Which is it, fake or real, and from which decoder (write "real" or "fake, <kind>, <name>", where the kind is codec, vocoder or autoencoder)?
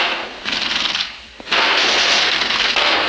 fake, codec, SNAC